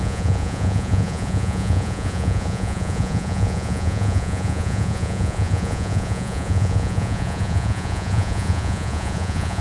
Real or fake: fake